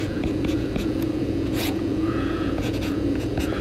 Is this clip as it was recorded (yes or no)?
no